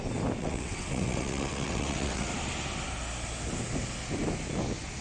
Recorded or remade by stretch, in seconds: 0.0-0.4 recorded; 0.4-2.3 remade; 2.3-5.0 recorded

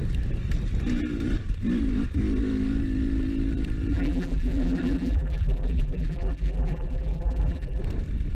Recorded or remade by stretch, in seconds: 0.0-3.9 recorded; 3.9-7.8 remade; 7.8-8.3 recorded

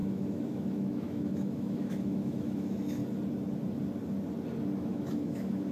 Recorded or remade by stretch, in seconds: 0.0-3.0 remade; 3.0-4.8 recorded; 4.8-5.7 remade